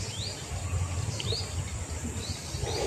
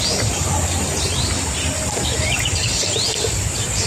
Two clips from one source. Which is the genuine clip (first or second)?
first